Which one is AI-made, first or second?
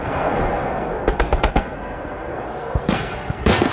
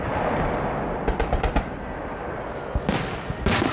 first